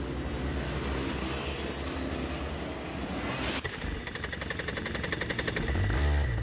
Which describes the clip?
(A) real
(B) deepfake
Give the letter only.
A